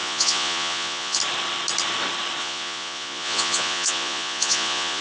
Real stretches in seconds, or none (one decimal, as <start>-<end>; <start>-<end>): 1.2-2.4